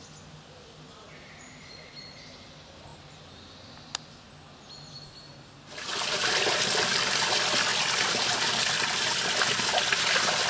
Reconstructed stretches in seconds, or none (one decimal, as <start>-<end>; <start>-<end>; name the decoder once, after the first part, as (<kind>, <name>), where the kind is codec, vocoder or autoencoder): none